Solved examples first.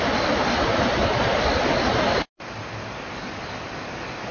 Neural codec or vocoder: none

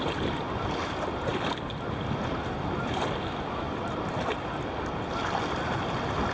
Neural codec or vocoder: none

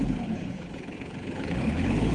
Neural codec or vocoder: codec, HILCodec